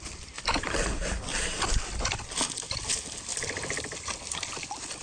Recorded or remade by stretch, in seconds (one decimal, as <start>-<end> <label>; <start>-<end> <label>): 0.0-5.0 recorded